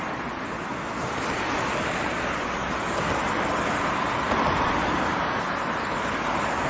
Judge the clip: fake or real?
real